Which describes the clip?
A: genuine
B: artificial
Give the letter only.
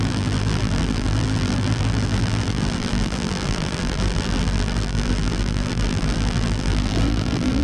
B